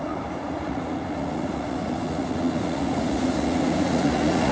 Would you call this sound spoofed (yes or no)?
yes